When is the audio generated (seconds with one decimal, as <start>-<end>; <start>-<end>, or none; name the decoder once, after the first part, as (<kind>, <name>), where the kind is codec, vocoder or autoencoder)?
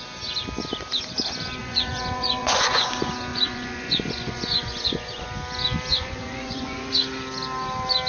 1.6-2.9 (vocoder, Vocos); 3.3-5.2; 5.9-6.9